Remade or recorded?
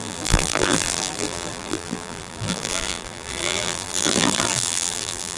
remade